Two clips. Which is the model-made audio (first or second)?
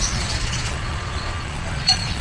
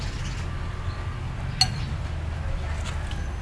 first